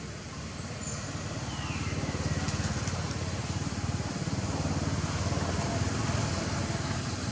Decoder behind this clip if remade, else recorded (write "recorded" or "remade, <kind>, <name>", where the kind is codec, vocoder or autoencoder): recorded